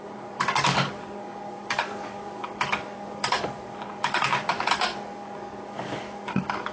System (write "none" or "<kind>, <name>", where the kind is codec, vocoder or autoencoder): codec, DAC